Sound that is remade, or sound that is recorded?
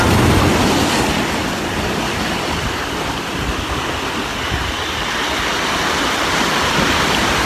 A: recorded